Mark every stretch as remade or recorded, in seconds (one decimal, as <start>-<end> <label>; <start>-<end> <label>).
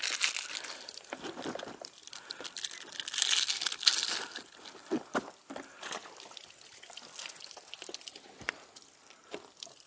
0.0-9.9 recorded